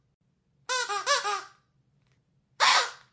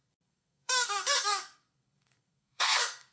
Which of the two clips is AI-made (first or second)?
second